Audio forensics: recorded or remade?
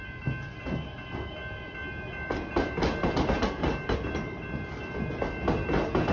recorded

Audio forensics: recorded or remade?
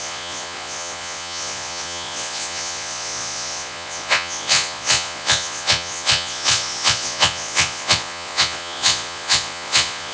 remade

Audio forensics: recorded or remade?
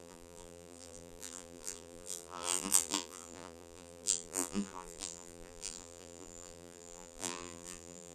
remade